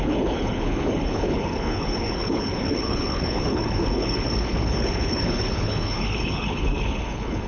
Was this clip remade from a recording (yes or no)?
yes